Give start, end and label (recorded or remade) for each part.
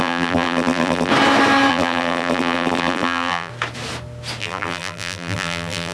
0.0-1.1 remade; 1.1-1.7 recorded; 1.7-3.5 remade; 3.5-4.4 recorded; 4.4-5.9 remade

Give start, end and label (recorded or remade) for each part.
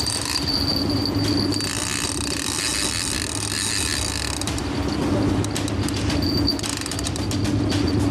0.0-8.1 recorded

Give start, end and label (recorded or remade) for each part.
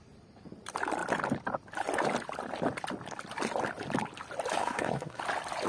0.0-4.6 recorded; 4.6-5.2 remade; 5.2-5.7 recorded